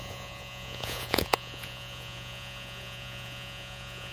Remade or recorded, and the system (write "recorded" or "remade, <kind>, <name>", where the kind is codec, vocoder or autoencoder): remade, vocoder, Vocos